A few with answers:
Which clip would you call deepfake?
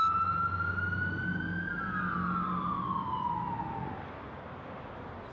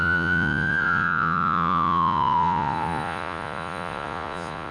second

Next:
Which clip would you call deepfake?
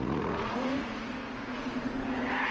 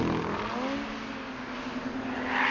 first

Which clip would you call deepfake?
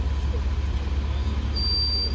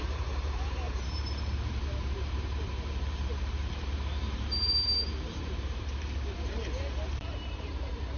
second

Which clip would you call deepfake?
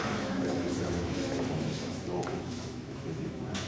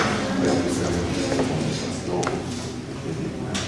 first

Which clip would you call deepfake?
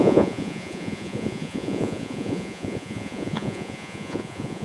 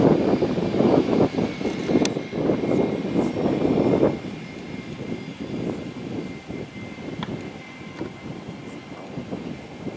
first